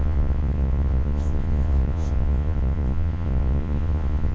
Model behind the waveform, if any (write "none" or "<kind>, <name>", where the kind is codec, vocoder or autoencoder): vocoder, Vocos